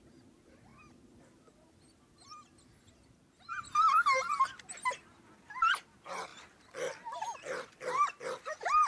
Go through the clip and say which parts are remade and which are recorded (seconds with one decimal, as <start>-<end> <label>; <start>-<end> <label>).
0.0-8.9 recorded

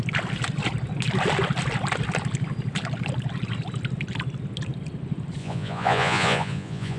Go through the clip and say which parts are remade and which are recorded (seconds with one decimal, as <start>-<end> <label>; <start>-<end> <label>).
0.0-5.4 recorded; 5.4-7.0 remade

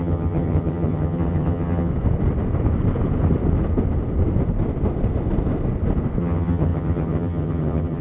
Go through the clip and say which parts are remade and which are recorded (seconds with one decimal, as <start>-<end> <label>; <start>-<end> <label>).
0.0-1.9 remade; 1.9-6.2 recorded; 6.2-8.0 remade

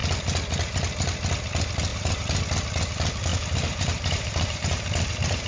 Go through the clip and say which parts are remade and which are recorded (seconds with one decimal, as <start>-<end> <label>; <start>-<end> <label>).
0.0-1.9 recorded; 1.9-2.4 remade; 2.4-3.3 recorded; 3.3-5.5 remade

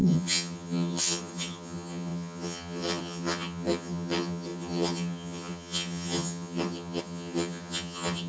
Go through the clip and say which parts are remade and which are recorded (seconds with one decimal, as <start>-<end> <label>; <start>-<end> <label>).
0.0-8.3 remade

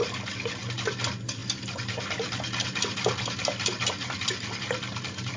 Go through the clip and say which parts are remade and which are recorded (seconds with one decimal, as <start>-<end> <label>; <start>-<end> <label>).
0.0-5.4 recorded

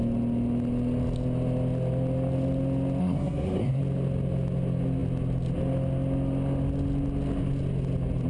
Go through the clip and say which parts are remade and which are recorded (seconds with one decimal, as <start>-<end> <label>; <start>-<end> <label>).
0.0-3.0 recorded; 3.0-3.8 remade; 3.8-8.3 recorded